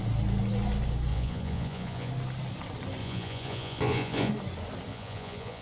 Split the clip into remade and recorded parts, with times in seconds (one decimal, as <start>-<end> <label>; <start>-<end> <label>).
0.0-1.1 recorded; 1.1-2.1 remade; 2.1-3.0 recorded; 3.0-4.3 remade; 4.3-4.9 recorded; 4.9-5.6 remade